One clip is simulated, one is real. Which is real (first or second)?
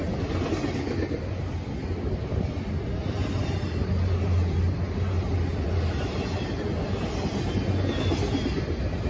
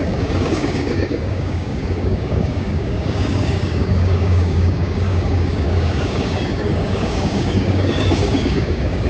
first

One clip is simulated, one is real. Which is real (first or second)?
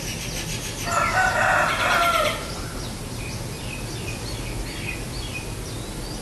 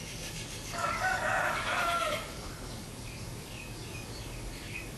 first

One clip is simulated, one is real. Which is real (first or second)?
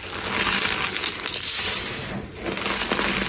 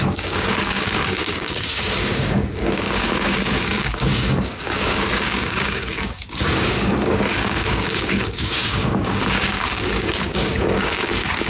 first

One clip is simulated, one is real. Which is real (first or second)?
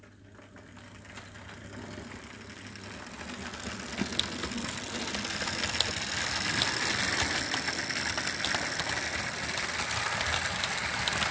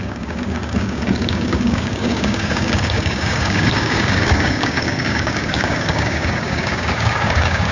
first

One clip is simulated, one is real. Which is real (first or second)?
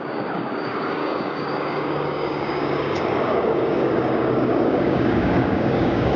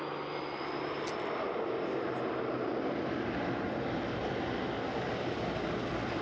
second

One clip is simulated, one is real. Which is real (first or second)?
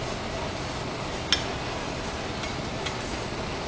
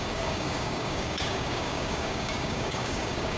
first